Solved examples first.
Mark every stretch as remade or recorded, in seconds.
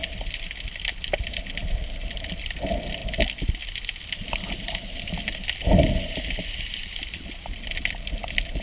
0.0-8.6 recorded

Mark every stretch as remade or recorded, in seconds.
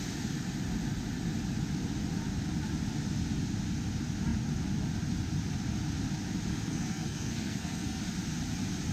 0.0-6.5 recorded; 6.5-8.0 remade; 8.0-8.9 recorded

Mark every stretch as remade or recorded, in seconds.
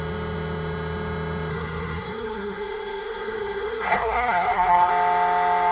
0.0-1.5 recorded; 1.5-4.9 remade; 4.9-5.7 recorded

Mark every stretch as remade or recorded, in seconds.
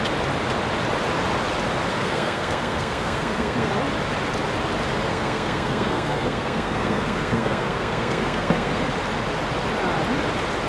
0.0-1.9 recorded; 1.9-3.7 remade; 3.7-5.1 recorded; 5.1-8.8 remade; 8.8-10.7 recorded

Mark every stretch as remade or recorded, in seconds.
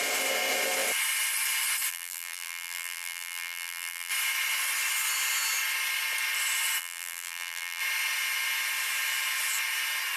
0.0-1.9 recorded; 1.9-4.1 remade; 4.1-6.8 recorded; 6.8-7.8 remade; 7.8-10.2 recorded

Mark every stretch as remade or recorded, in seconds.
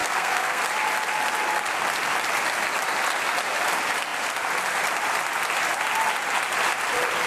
0.0-0.6 remade; 0.6-7.3 recorded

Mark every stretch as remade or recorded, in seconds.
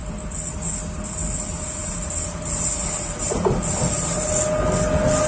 0.0-5.3 recorded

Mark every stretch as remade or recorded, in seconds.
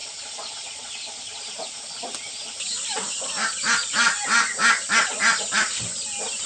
0.0-1.4 remade; 1.4-6.5 recorded